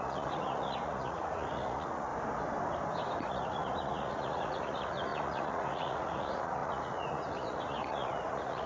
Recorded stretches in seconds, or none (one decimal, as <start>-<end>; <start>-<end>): 2.1-3.2